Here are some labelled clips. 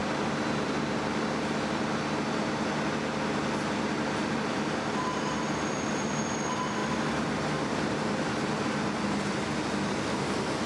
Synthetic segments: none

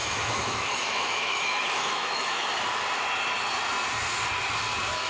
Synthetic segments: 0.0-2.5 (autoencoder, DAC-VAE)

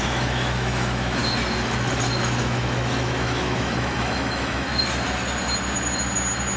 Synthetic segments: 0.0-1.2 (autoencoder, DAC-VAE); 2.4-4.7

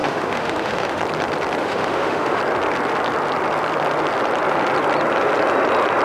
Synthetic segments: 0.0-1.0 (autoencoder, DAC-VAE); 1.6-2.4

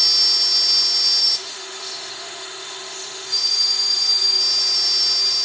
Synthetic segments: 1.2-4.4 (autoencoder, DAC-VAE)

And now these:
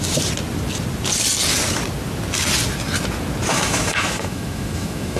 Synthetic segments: 3.5-5.2 (autoencoder, DAC-VAE)

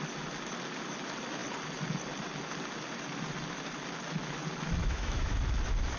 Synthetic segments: 4.8-5.3 (autoencoder, DAC-VAE)